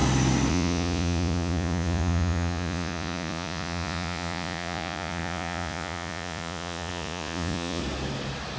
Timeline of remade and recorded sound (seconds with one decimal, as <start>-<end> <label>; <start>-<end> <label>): 0.0-0.5 recorded; 0.5-7.8 remade; 7.8-8.6 recorded